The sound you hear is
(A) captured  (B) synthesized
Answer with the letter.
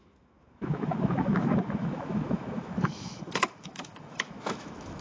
B